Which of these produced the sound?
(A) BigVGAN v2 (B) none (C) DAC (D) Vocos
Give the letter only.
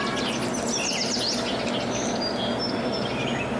B